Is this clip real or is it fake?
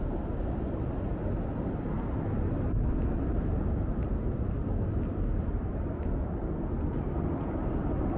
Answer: real